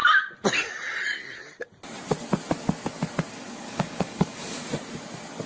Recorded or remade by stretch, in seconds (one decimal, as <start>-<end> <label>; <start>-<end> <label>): 0.0-3.3 recorded; 3.3-4.6 remade; 4.6-5.5 recorded